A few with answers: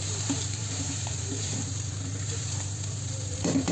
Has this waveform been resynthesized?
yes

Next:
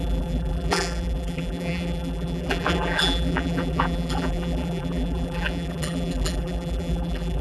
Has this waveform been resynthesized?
yes